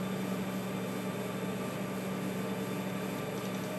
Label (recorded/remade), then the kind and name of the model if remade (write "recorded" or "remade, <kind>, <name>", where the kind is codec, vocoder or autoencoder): recorded